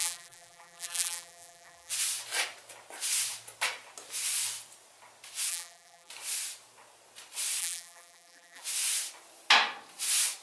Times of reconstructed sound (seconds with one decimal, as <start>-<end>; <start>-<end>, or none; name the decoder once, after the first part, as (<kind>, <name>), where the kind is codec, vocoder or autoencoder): 0.0-1.9 (vocoder, BigVGAN v2); 5.5-6.1; 7.6-8.6